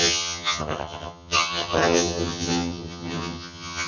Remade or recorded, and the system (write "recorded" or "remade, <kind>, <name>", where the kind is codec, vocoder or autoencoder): remade, vocoder, HiFi-GAN